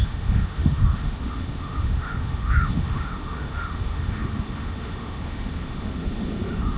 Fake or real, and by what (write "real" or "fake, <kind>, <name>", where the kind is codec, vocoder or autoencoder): fake, autoencoder, DAC-VAE